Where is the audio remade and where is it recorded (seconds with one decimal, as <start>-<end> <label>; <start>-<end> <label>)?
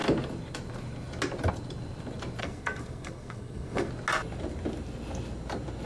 0.0-2.4 recorded; 2.4-3.9 remade; 3.9-5.9 recorded